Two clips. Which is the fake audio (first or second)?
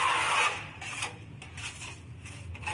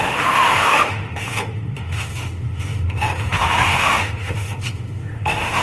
second